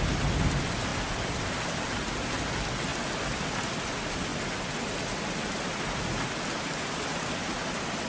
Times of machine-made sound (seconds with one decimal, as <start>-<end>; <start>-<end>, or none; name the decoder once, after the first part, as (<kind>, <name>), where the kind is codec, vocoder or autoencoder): 0.9-2.5 (vocoder, BigVGAN v2)